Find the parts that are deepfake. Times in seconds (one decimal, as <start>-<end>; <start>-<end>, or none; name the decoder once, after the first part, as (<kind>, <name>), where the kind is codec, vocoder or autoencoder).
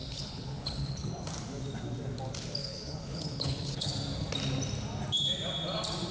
0.0-1.1 (codec, HILCodec); 2.6-3.9